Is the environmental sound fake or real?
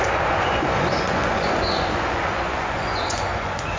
fake